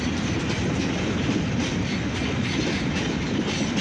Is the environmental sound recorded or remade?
recorded